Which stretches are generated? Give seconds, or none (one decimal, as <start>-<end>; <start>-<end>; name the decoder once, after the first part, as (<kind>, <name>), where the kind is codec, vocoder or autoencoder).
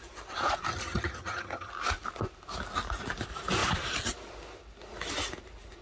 0.7-1.7 (vocoder, HiFi-GAN)